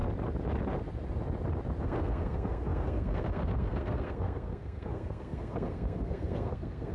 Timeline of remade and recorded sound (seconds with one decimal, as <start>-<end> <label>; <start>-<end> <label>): 0.0-1.8 recorded; 1.8-6.9 remade